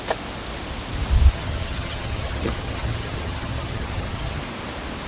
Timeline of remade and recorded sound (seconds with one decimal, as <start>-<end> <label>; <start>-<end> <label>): 0.0-1.3 recorded; 1.3-4.4 remade; 4.4-5.1 recorded